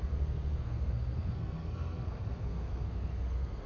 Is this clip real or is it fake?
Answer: fake